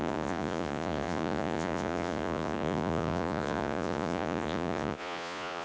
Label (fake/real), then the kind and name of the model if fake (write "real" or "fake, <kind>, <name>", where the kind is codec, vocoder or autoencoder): fake, vocoder, Vocos